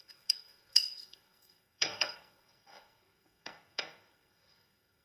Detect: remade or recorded remade